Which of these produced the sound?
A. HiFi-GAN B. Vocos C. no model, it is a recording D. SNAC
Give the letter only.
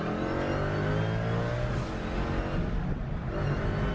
C